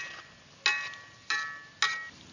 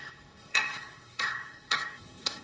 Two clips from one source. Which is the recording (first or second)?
first